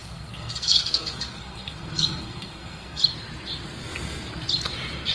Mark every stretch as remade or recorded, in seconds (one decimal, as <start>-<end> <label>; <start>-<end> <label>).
0.0-3.0 remade; 3.0-5.1 recorded